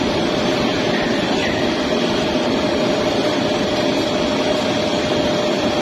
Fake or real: fake